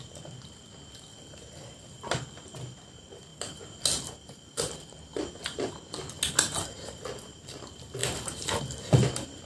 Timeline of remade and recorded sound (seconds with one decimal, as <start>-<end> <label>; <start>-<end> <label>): 0.0-9.5 recorded